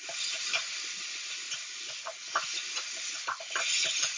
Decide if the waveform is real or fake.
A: real